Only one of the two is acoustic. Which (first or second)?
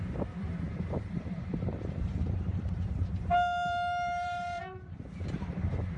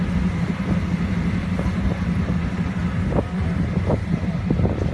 second